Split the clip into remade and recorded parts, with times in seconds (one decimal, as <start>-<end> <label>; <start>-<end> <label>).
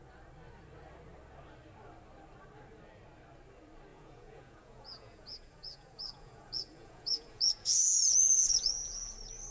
0.0-3.9 recorded; 3.9-9.1 remade; 9.1-9.5 recorded